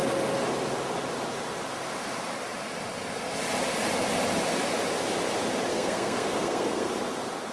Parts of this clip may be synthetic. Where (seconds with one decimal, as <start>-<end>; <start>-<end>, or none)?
5.7-6.9